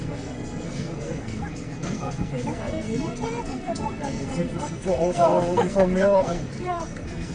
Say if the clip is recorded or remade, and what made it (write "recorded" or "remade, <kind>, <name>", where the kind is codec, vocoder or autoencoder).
remade, codec, SNAC